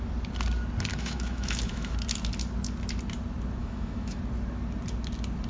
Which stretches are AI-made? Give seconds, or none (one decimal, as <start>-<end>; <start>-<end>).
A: 0.9-1.9; 3.6-4.2